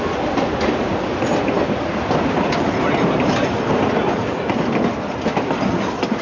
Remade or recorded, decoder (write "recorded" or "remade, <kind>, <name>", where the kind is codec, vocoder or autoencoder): remade, vocoder, BigVGAN v2